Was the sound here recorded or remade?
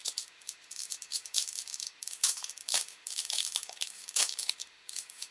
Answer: remade